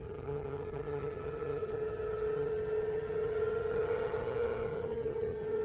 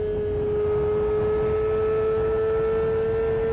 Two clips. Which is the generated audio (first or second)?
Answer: first